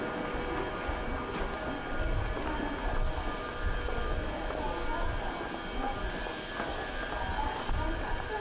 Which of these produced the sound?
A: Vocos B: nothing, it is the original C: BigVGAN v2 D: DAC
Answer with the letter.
B